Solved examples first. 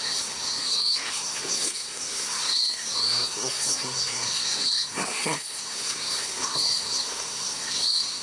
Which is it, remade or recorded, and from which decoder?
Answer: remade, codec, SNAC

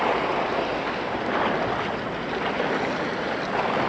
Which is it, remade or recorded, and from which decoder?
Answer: recorded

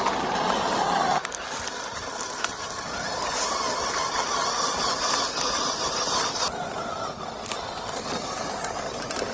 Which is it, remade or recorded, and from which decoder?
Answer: recorded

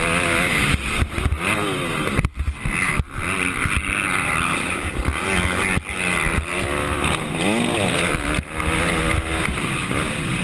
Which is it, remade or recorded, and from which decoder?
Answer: recorded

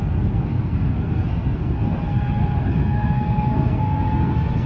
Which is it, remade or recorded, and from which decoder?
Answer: remade, codec, SNAC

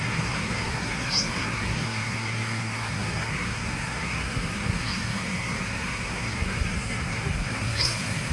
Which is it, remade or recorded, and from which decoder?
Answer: remade, codec, SNAC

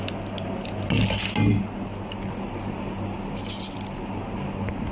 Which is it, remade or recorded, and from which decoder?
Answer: recorded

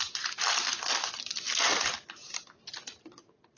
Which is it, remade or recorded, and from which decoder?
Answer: recorded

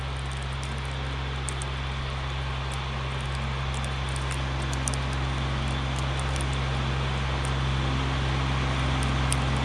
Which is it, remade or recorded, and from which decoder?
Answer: recorded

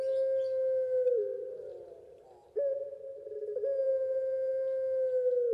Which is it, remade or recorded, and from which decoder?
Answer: recorded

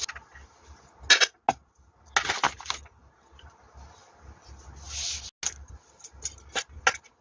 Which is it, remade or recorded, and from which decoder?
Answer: recorded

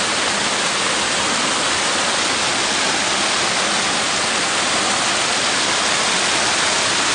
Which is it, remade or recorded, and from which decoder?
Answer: recorded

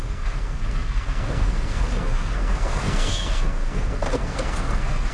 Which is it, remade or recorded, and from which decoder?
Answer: remade, codec, SNAC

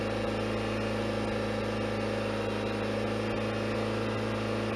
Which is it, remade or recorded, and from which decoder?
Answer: recorded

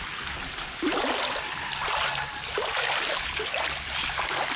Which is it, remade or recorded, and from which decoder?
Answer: recorded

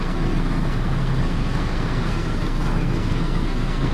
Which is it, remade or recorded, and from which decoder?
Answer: remade, codec, SNAC